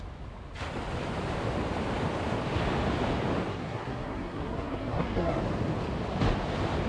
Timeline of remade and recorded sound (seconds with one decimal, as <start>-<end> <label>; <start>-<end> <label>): 0.0-3.5 recorded; 3.5-5.4 remade; 5.4-6.9 recorded